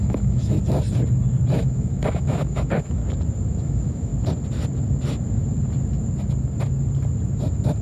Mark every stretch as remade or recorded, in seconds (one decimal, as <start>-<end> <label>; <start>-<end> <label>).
0.0-0.6 remade; 0.6-1.6 recorded; 1.6-3.0 remade; 3.0-3.6 recorded; 3.6-4.1 remade; 4.1-7.8 recorded